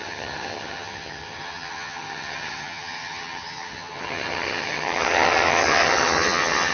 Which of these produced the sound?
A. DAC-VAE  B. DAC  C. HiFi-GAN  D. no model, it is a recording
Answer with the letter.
C